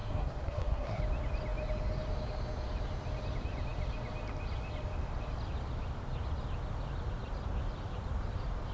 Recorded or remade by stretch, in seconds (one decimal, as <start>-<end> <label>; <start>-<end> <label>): 0.0-1.0 remade; 1.0-8.7 recorded